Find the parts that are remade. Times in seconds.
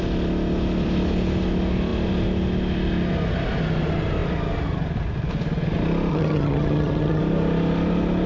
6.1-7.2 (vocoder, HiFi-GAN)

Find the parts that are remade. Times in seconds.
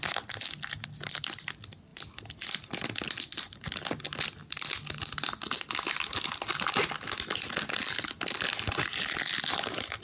none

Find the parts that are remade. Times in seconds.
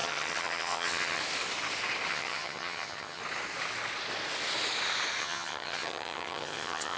0.0-1.2 (vocoder, HiFi-GAN); 2.1-3.2; 5.2-7.0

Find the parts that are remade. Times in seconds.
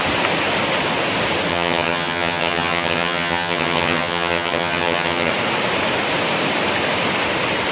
1.5-5.3 (vocoder, HiFi-GAN)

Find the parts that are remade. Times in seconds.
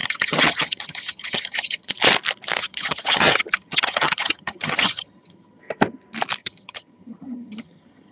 0.0-1.9 (vocoder, HiFi-GAN); 2.6-5.6; 6.4-8.1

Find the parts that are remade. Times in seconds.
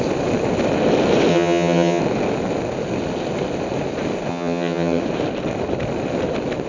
1.3-2.0 (vocoder, HiFi-GAN); 4.3-5.0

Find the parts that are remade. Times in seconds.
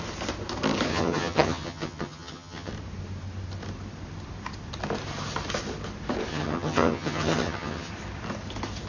0.9-2.7 (vocoder, HiFi-GAN); 6.3-7.9